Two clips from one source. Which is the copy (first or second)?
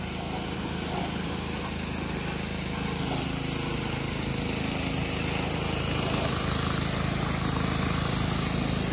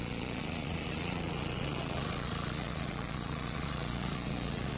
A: second